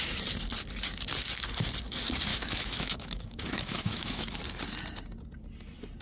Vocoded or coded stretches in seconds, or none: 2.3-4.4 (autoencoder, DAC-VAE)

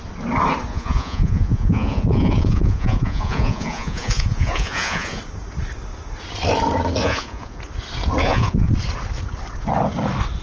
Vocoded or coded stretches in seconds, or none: 0.7-5.2 (vocoder, Vocos); 7.0-7.6; 8.2-8.7

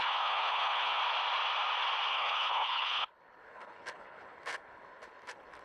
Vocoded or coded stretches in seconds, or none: 0.0-1.0 (codec, HILCodec); 2.1-5.6